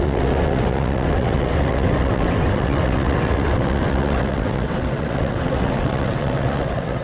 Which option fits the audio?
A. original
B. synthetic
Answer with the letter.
B